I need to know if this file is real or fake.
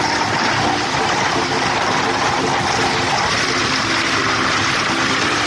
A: real